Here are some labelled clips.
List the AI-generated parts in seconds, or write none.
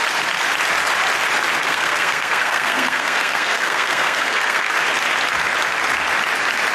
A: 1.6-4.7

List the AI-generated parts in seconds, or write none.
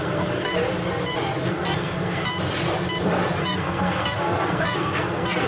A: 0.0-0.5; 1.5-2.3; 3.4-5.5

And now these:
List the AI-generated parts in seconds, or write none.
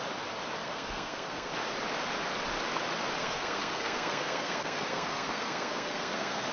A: 0.6-1.5; 3.2-6.5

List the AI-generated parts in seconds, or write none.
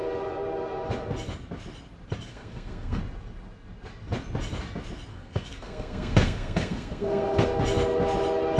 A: 2.3-3.0; 5.1-7.6